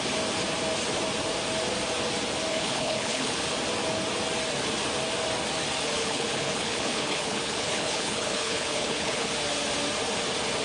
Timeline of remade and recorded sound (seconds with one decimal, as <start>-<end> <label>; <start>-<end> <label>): 0.0-2.5 recorded; 2.5-3.4 remade; 3.4-6.0 recorded; 6.0-9.3 remade; 9.3-10.6 recorded